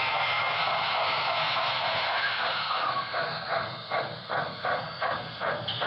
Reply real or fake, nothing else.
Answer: fake